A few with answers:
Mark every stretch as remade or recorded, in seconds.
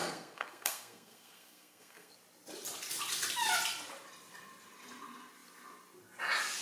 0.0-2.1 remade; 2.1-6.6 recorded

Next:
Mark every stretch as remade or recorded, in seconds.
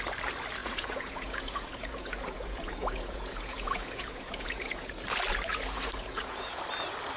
0.0-0.6 recorded; 0.6-4.9 remade; 4.9-5.5 recorded; 5.5-6.6 remade; 6.6-7.2 recorded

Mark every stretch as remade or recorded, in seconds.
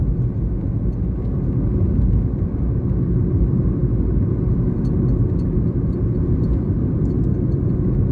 0.0-8.1 recorded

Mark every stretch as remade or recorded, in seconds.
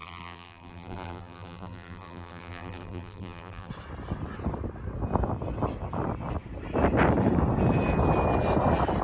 0.0-3.7 remade; 3.7-9.0 recorded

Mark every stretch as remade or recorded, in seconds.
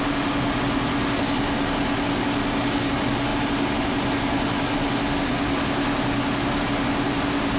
0.0-7.6 recorded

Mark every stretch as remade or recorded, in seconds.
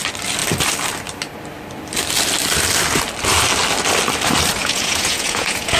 0.0-4.6 recorded; 4.6-5.8 remade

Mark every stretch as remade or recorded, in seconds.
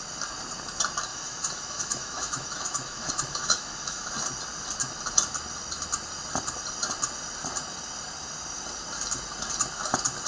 0.0-1.1 recorded; 1.1-4.1 remade; 4.1-10.3 recorded